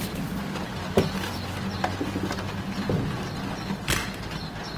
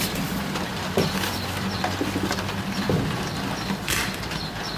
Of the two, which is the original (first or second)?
first